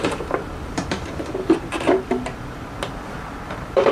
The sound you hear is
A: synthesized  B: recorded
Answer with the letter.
A